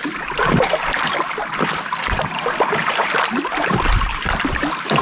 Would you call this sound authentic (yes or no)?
no